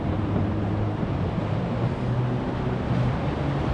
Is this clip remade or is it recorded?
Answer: recorded